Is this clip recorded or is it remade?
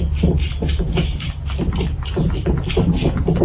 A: recorded